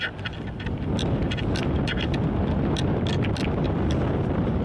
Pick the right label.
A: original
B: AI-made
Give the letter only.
A